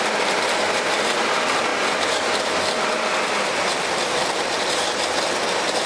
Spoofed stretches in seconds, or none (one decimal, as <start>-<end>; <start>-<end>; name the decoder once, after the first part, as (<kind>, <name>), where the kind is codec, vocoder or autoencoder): 1.7-4.7 (vocoder, BigVGAN v2)